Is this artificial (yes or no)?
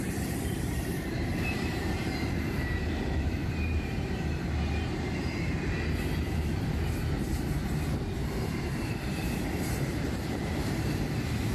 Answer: yes